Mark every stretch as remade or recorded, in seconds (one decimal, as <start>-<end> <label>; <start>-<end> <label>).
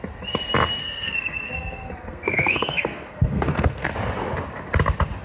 0.0-0.8 recorded; 0.8-3.9 remade; 3.9-5.2 recorded